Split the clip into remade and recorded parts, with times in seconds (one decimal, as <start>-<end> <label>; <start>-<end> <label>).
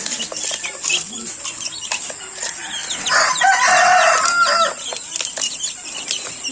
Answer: 0.0-6.5 recorded